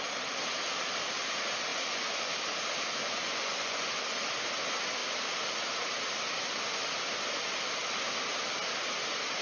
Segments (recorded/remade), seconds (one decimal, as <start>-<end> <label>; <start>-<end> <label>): 0.0-1.7 recorded; 1.7-2.3 remade; 2.3-3.0 recorded; 3.0-3.9 remade; 3.9-9.4 recorded